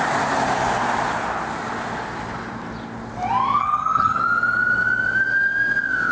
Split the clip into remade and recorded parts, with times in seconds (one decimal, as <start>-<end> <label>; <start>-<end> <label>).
0.0-3.6 recorded; 3.6-4.2 remade; 4.2-6.1 recorded